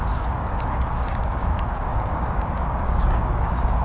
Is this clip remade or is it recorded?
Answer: remade